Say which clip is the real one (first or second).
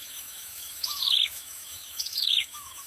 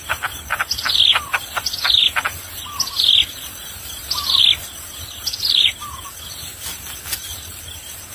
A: second